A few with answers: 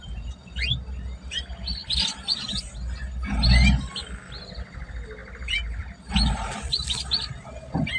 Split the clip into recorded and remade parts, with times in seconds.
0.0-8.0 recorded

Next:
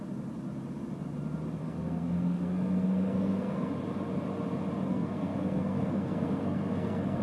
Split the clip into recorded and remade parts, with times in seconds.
0.0-1.6 recorded; 1.6-3.7 remade; 3.7-4.9 recorded; 4.9-7.2 remade